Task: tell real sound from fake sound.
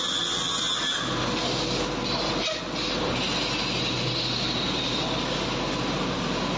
real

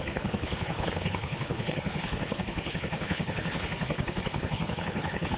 fake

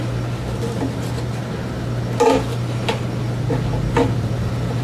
real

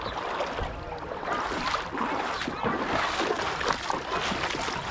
real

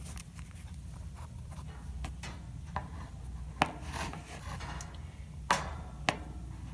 real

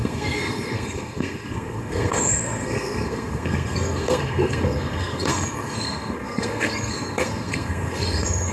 fake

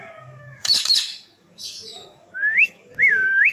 fake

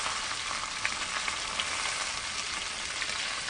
real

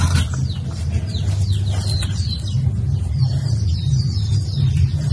real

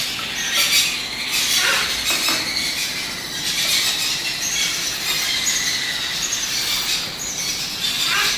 real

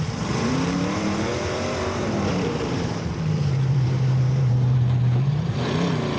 fake